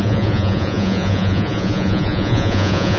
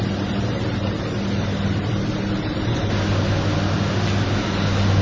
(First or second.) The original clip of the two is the second